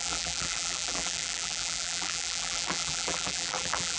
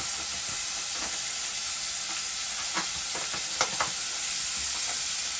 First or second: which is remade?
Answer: first